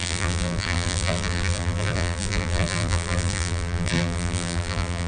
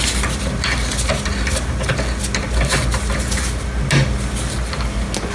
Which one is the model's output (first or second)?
first